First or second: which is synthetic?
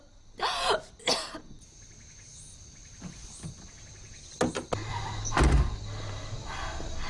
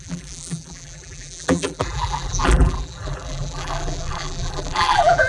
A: second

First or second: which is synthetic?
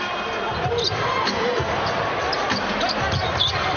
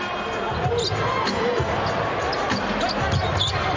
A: first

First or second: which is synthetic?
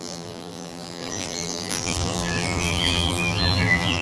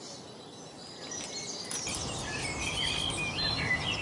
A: first